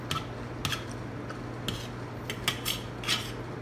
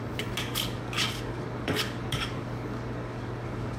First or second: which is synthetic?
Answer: second